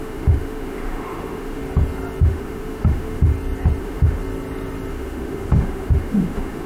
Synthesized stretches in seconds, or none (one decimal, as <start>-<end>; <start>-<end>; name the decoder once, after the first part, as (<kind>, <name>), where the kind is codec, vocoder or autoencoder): 0.0-1.6 (autoencoder, DAC-VAE); 2.2-3.3; 3.8-4.2; 4.9-6.7